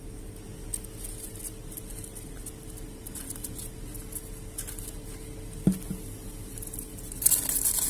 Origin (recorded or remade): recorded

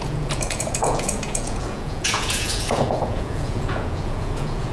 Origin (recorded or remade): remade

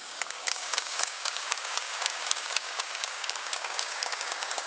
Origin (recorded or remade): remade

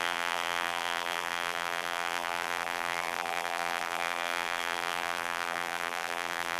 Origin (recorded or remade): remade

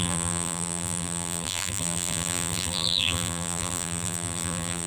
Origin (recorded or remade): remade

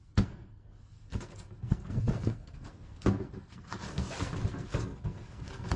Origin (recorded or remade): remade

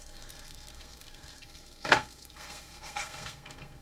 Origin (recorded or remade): remade